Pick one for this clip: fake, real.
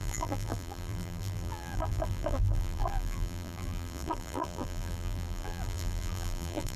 fake